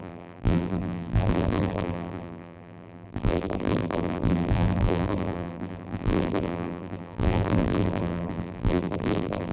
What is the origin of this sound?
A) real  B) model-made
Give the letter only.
B